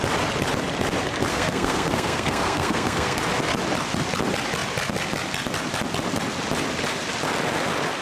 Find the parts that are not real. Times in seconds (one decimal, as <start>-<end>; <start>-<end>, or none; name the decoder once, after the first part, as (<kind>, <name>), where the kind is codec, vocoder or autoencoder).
1.3-3.2 (codec, SNAC)